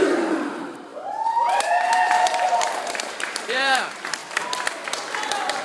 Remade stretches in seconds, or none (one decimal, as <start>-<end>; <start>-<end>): 0.0-4.2